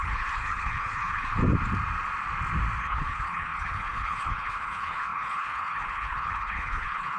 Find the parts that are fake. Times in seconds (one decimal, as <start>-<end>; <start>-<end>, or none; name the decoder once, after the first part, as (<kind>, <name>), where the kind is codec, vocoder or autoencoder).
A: 0.0-1.4 (codec, HILCodec); 2.8-7.2